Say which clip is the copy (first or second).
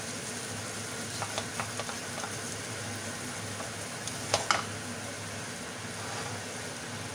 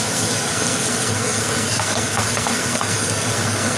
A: second